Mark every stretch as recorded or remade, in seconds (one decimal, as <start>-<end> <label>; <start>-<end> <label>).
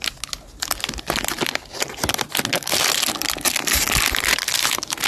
0.0-5.1 recorded